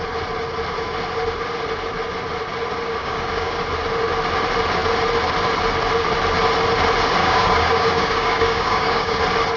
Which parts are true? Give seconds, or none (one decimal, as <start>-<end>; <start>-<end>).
0.0-3.0; 3.6-7.2; 9.2-9.6